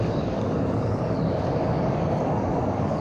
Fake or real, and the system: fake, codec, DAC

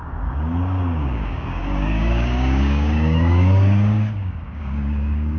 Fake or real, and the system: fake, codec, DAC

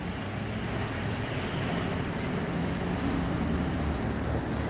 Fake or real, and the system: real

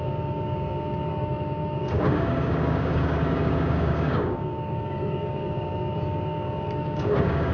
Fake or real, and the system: fake, codec, DAC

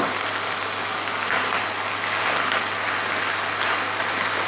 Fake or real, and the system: real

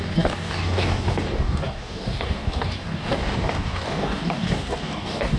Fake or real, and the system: fake, codec, DAC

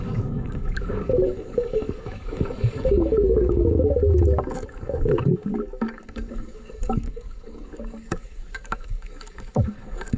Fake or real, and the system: fake, codec, DAC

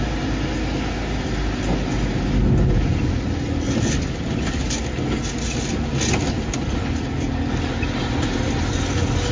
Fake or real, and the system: real